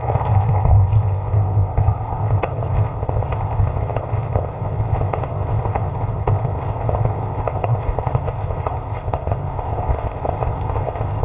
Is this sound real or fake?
fake